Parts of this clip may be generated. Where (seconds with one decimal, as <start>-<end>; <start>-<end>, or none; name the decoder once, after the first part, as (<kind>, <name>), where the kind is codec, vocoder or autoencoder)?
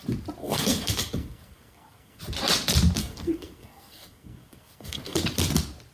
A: 0.4-2.2 (codec, SNAC); 3.0-5.2